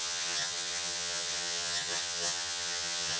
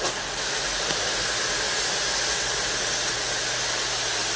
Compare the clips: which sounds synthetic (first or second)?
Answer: first